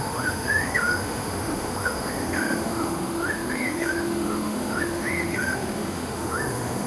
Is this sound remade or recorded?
remade